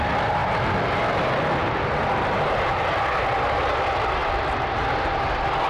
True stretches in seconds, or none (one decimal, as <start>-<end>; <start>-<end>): 0.0-5.7